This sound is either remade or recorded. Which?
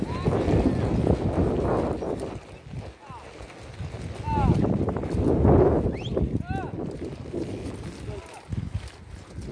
recorded